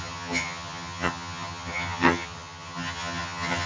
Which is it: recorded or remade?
remade